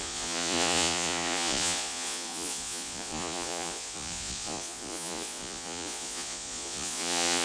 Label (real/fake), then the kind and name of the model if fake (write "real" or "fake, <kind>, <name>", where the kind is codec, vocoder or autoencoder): fake, vocoder, Vocos